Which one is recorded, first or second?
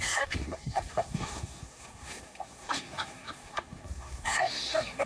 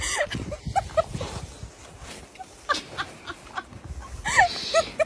second